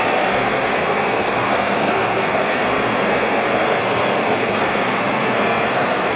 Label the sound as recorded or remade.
remade